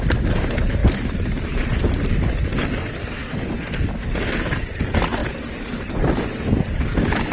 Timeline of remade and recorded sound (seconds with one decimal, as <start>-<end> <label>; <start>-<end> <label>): 0.0-0.8 recorded; 0.8-2.1 remade; 2.1-5.2 recorded; 5.2-5.8 remade; 5.8-7.3 recorded